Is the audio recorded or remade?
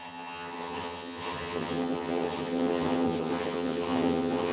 remade